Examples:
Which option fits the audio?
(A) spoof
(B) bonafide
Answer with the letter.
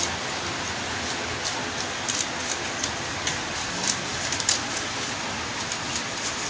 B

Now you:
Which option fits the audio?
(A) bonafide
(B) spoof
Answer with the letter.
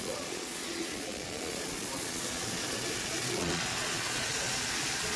B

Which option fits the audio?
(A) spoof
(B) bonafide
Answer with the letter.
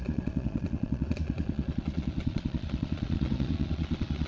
A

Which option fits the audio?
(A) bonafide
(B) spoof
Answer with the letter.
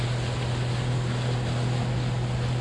A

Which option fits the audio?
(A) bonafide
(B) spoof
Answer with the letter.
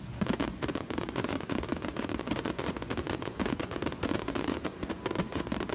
B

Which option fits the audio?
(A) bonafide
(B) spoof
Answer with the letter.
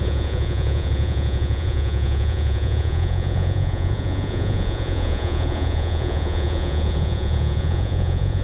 B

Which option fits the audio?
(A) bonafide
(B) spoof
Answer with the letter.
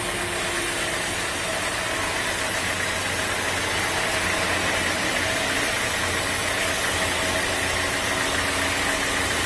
A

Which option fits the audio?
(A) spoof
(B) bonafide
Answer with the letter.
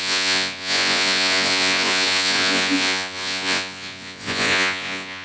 A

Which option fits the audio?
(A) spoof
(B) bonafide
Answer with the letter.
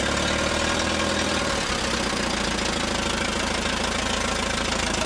B